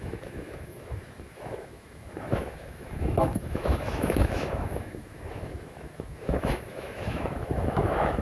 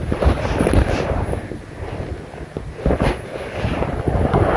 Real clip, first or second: second